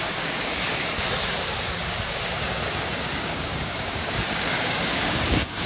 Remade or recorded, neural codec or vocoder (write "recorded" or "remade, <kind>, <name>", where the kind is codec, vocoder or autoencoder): remade, codec, DAC